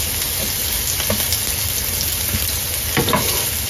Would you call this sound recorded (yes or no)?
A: yes